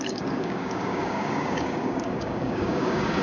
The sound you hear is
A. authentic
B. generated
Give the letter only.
B